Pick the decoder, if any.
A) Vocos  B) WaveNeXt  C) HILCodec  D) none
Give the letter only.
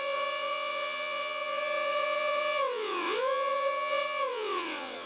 B